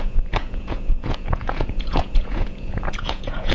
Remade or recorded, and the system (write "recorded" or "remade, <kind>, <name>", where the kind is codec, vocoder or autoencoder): remade, vocoder, Vocos